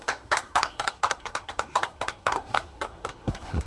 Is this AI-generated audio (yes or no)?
yes